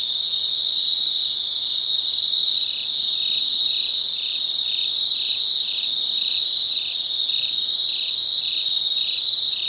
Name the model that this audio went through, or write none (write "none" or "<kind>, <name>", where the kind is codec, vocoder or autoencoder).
none